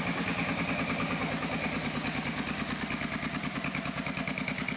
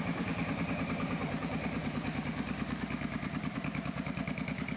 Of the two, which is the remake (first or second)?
second